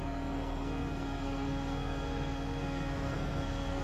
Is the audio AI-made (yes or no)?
yes